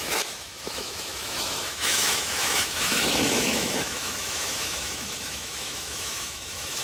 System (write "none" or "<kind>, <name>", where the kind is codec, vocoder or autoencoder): autoencoder, DAC-VAE